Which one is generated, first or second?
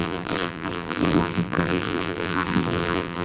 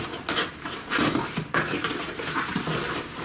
first